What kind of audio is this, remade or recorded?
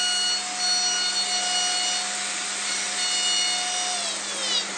recorded